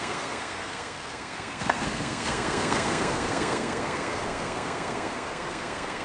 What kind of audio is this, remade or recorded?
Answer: remade